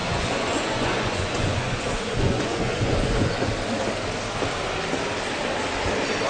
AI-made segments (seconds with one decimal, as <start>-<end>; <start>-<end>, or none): 0.0-3.5